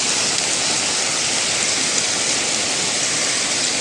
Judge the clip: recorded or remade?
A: recorded